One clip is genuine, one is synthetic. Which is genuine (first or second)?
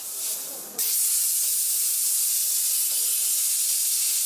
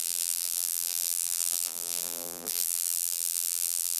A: first